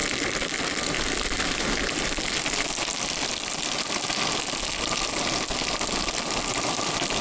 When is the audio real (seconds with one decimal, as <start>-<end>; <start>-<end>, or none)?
0.0-7.2